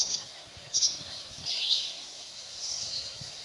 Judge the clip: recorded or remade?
remade